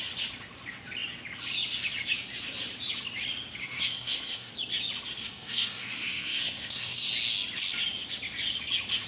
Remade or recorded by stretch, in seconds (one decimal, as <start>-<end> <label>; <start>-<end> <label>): 0.0-3.6 recorded; 3.6-4.5 remade; 4.5-5.2 recorded; 5.2-7.1 remade; 7.1-9.1 recorded